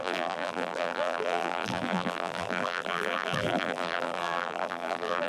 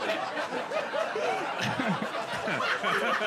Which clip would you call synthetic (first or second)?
first